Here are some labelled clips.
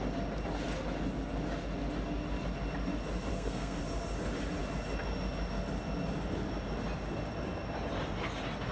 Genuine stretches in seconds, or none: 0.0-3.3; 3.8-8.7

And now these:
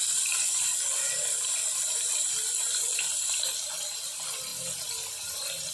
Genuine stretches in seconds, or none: 0.0-5.7

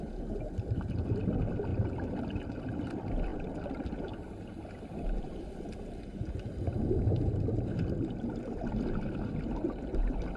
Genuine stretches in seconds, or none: 0.0-10.4